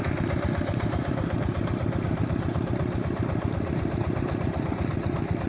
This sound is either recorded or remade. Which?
remade